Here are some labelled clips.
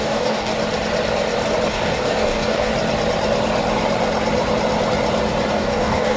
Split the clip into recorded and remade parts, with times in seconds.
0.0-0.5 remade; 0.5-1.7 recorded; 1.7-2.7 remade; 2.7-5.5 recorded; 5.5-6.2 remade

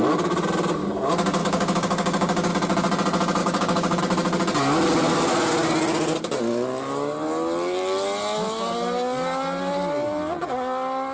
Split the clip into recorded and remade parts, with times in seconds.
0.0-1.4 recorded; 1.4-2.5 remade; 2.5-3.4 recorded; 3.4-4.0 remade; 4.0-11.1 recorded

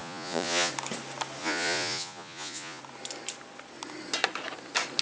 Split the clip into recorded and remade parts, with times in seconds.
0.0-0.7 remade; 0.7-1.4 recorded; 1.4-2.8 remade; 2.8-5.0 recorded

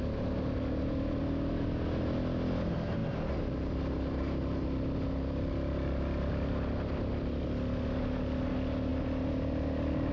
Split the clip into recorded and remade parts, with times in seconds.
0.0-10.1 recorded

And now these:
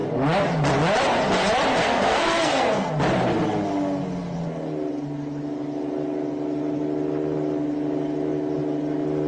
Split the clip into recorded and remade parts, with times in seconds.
0.0-1.8 recorded; 1.8-2.9 remade; 2.9-9.3 recorded

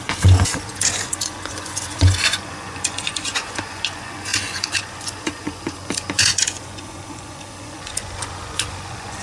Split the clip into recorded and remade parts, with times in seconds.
0.0-9.2 remade